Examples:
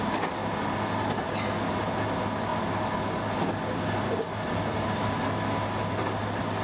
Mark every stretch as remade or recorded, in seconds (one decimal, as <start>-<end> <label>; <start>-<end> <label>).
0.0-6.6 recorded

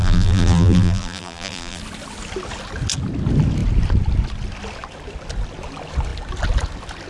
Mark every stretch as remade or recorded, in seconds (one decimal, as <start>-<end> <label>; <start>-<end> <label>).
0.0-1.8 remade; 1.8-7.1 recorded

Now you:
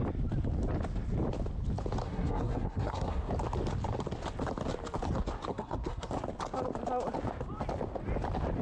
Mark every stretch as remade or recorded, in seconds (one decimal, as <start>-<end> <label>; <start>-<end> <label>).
0.0-2.0 recorded; 2.0-3.3 remade; 3.3-5.5 recorded; 5.5-6.1 remade; 6.1-8.6 recorded